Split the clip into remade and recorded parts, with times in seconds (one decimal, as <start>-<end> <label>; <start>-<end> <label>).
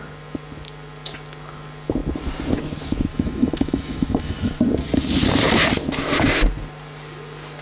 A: 0.0-3.1 recorded; 3.1-4.5 remade; 4.5-7.6 recorded